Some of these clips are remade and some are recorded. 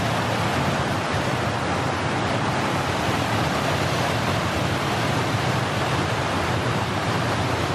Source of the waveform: recorded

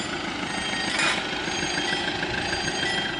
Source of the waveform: recorded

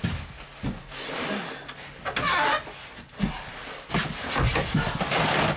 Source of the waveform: recorded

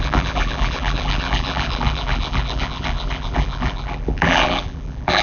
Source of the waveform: remade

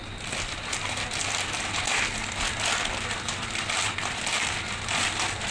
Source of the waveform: remade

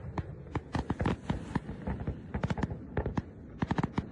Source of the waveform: recorded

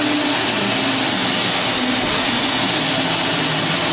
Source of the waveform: recorded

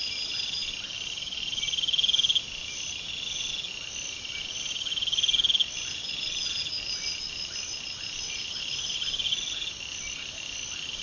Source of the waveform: recorded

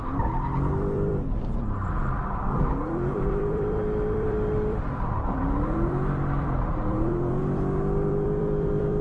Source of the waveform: remade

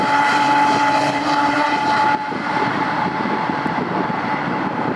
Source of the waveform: remade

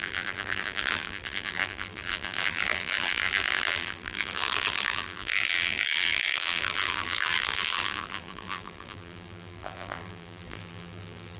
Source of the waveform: remade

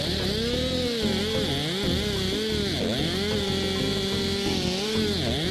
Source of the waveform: recorded